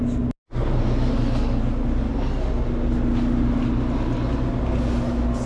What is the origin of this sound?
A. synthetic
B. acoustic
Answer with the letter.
B